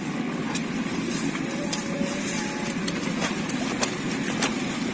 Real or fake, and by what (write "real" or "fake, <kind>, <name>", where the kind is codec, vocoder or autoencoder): real